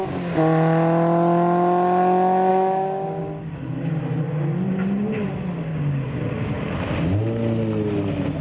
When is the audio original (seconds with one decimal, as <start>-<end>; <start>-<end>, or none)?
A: 0.0-2.5; 3.2-5.7; 6.6-8.4